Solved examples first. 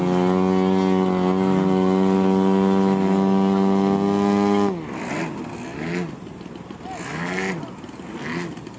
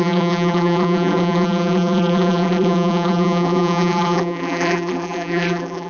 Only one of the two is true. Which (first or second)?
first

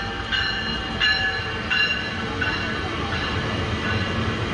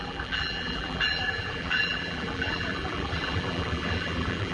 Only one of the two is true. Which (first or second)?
first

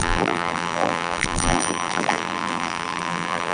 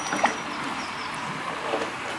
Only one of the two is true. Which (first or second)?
second